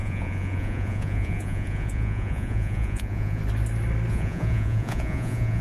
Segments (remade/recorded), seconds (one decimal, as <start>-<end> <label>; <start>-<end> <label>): 0.0-3.4 remade; 3.4-4.1 recorded; 4.1-5.6 remade